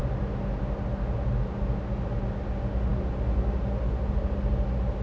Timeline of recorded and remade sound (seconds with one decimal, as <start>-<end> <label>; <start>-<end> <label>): 0.0-5.0 recorded